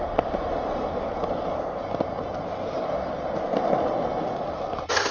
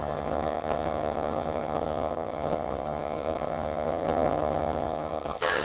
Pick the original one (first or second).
first